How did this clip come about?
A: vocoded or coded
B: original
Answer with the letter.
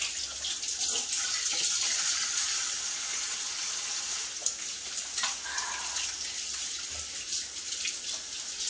B